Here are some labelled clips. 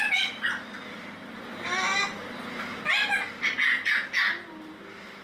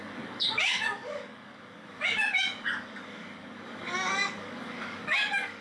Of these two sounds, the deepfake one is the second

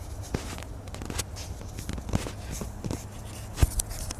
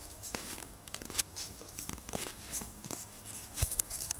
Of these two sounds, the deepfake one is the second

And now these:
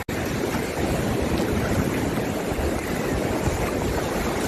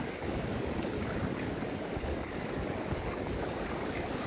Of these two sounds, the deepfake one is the second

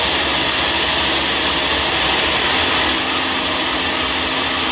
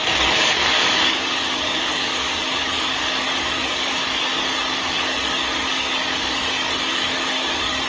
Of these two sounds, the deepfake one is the second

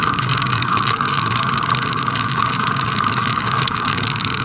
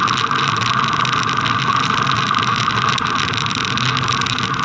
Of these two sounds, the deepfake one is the first